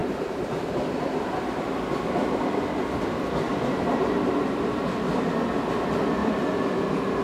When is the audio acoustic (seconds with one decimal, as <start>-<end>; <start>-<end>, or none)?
1.3-3.5; 4.1-7.2